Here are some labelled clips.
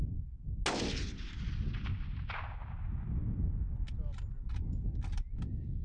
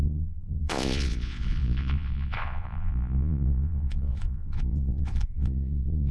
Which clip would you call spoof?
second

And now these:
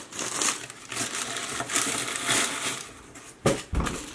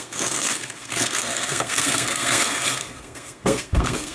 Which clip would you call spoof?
second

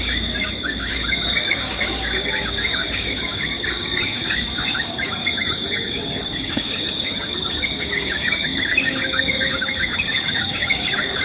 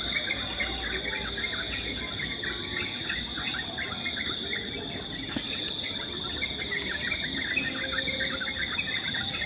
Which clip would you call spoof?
first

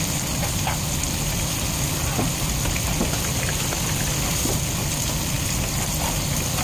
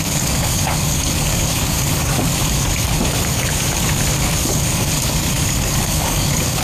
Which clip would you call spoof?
second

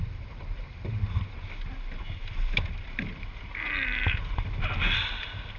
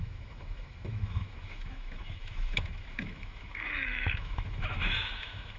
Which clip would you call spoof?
second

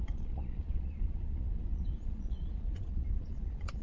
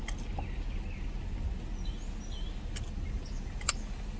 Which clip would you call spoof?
first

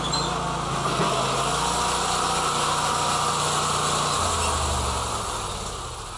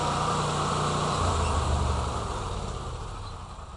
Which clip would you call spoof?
second